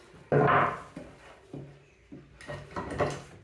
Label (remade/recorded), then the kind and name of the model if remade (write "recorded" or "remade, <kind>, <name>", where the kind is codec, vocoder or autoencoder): recorded